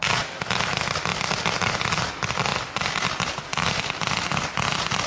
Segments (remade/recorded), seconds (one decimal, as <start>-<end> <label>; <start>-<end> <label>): 0.0-1.1 recorded; 1.1-2.1 remade; 2.1-5.1 recorded